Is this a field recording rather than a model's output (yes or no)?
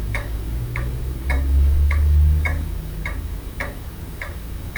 no